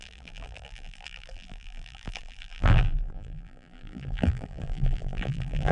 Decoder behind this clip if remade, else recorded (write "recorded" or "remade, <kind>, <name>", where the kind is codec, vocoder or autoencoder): remade, vocoder, BigVGAN v2